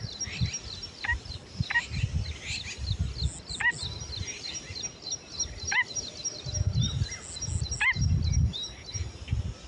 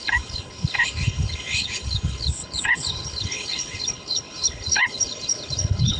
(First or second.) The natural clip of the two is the first